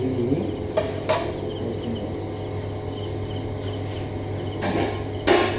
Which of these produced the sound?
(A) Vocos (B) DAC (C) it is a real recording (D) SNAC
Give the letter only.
C